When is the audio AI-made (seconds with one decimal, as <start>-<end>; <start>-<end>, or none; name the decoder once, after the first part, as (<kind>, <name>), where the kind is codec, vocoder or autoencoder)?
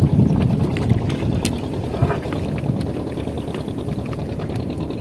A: none